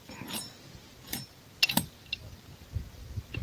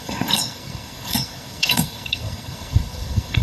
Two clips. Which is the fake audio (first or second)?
second